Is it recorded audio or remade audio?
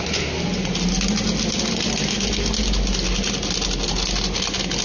recorded